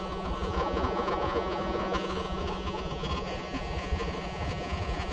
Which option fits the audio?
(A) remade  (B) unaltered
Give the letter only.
A